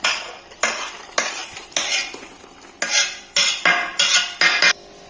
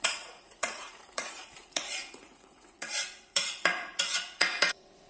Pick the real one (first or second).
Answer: first